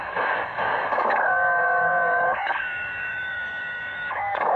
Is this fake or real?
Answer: fake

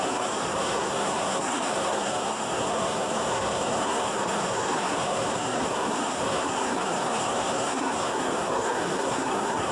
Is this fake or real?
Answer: fake